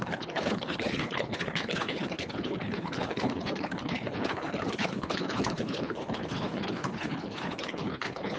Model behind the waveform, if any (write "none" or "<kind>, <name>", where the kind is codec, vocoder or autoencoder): codec, HILCodec